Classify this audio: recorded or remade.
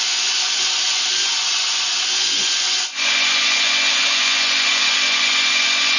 remade